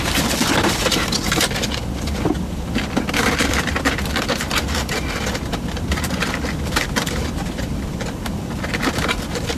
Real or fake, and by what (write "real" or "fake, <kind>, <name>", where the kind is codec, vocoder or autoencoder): fake, vocoder, BigVGAN v2